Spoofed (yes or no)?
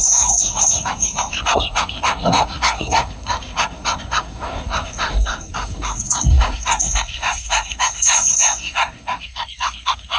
yes